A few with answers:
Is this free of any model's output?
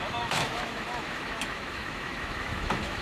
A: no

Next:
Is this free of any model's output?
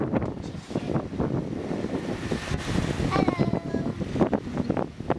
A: yes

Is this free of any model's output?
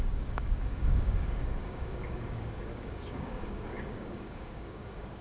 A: no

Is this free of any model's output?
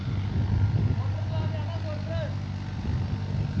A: yes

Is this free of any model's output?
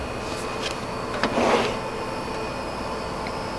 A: yes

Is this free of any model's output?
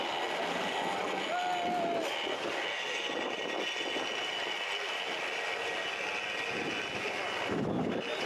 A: yes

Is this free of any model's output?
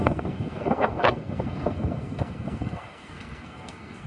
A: no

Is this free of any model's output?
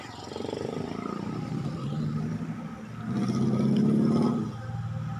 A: yes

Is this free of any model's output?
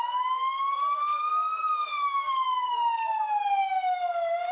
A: yes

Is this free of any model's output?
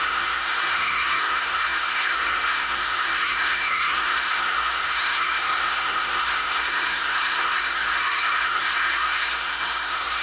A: no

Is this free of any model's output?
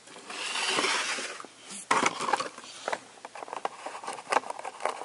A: yes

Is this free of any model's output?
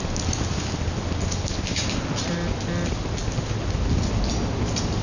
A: yes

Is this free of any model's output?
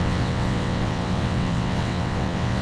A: no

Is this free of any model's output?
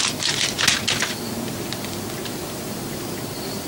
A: yes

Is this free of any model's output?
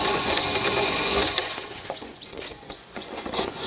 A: no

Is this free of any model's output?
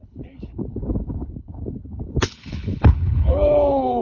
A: no